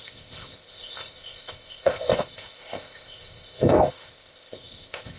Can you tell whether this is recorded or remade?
remade